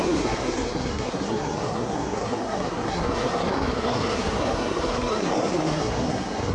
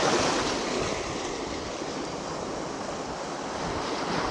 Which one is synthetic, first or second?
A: first